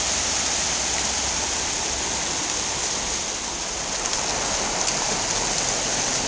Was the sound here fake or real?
real